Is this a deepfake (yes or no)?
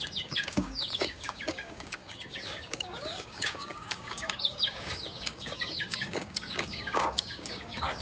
yes